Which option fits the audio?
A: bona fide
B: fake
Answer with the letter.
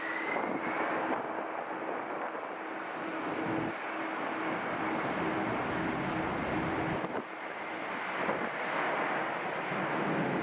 A